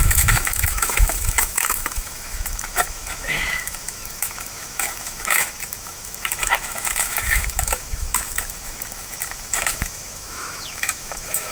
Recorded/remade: remade